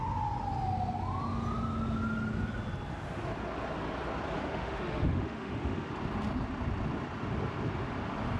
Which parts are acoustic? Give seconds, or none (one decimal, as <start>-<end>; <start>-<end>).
0.0-4.4; 5.9-8.4